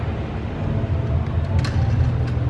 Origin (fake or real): real